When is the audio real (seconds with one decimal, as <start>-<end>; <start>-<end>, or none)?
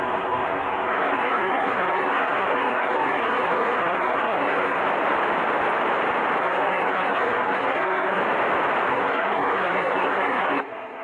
4.8-6.4; 8.2-8.9